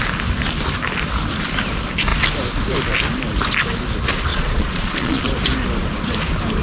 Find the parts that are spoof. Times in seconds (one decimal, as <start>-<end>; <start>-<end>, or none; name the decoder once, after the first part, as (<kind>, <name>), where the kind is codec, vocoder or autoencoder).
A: 4.3-5.2 (vocoder, Vocos)